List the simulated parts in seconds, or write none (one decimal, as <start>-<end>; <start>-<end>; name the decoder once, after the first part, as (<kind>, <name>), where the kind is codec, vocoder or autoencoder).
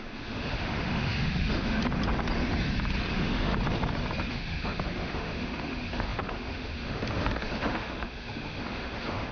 0.0-1.8 (autoencoder, DAC-VAE); 3.1-3.5; 4.3-9.3